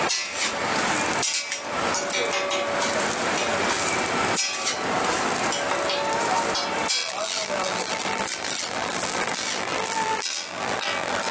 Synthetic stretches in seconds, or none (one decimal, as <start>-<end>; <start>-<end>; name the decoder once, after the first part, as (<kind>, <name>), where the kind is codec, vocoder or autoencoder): 7.0-11.3 (vocoder, BigVGAN v2)